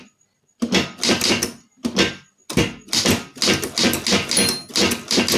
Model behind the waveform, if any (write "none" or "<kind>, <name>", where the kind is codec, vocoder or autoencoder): none